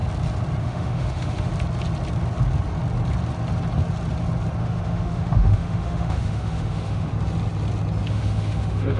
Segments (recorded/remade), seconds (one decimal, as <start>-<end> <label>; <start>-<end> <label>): 0.0-0.6 recorded; 0.6-1.5 remade; 1.5-4.6 recorded; 4.6-7.1 remade; 7.1-8.1 recorded; 8.1-9.0 remade